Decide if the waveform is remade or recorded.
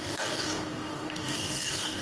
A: remade